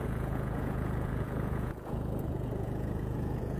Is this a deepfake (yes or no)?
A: yes